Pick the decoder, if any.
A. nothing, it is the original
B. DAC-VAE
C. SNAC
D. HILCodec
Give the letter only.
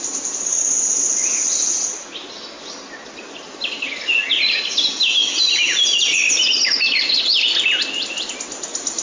A